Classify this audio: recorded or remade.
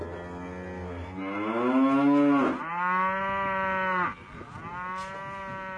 recorded